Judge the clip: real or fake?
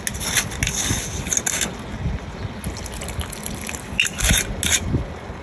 real